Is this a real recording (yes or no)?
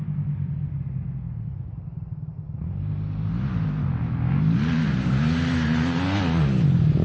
yes